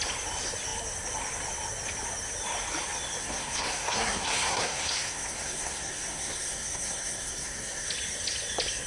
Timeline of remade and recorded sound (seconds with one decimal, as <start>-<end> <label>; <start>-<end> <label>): 0.0-3.2 recorded; 3.2-7.9 remade; 7.9-8.9 recorded